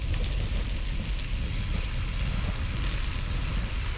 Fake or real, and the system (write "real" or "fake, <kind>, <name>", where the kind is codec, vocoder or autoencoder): real